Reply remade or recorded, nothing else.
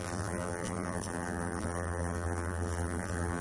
remade